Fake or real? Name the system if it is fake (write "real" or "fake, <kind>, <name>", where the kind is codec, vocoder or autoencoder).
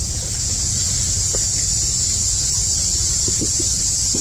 fake, vocoder, Vocos